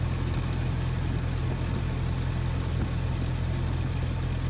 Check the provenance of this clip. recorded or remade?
recorded